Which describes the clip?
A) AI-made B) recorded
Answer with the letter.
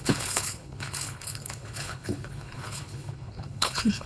A